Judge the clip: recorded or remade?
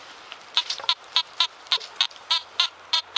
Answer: remade